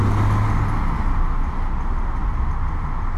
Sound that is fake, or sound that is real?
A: real